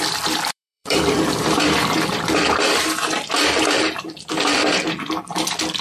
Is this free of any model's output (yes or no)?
no